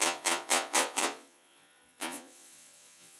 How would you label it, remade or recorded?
remade